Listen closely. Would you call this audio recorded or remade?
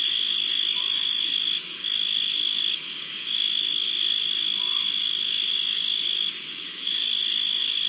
remade